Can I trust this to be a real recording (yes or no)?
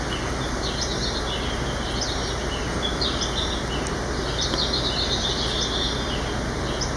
yes